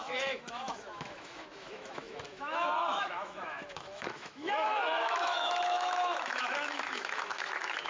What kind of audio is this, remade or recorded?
remade